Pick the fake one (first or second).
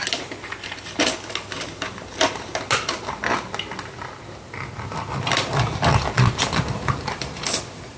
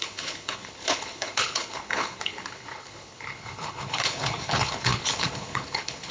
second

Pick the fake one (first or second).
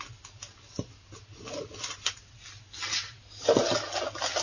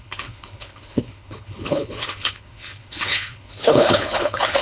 second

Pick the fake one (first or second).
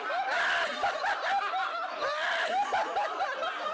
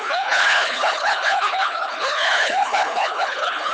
second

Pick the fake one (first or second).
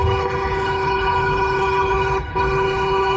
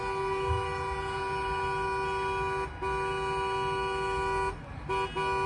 first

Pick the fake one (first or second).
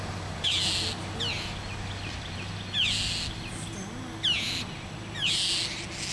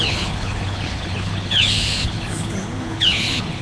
second